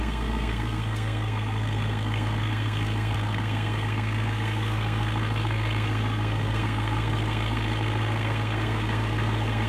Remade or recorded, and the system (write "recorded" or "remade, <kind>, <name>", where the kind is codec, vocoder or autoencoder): remade, codec, SNAC